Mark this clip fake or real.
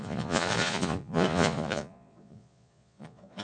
fake